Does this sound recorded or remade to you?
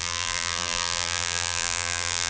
remade